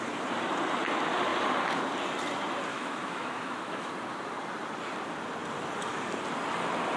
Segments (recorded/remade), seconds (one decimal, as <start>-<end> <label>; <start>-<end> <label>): 0.0-2.7 recorded; 2.7-3.9 remade; 3.9-7.0 recorded